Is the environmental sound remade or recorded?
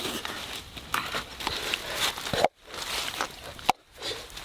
recorded